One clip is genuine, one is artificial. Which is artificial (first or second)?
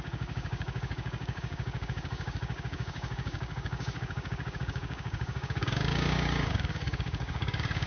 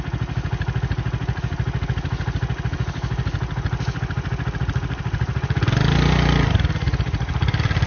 first